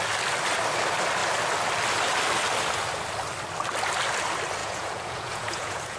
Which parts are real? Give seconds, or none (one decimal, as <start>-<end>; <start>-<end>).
0.0-4.6